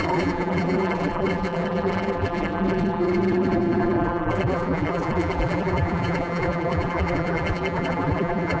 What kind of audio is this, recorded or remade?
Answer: remade